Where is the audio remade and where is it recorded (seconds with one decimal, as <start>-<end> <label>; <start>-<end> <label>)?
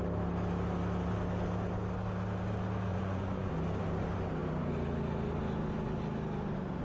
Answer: 0.0-2.9 recorded; 2.9-3.5 remade; 3.5-6.8 recorded